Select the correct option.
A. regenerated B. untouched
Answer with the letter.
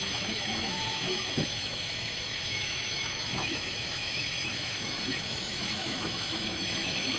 A